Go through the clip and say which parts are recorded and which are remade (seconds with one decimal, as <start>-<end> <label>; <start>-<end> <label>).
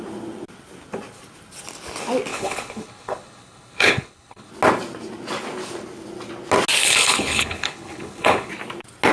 0.0-2.3 recorded; 2.3-4.5 remade; 4.5-6.8 recorded; 6.8-8.5 remade; 8.5-9.1 recorded